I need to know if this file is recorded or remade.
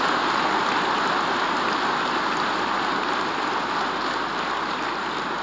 recorded